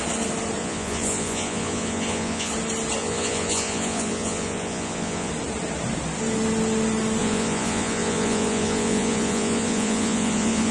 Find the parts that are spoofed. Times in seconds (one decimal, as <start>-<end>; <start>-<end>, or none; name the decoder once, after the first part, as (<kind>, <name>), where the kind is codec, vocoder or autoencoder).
0.6-2.5 (vocoder, Vocos); 3.0-5.3; 7.2-10.7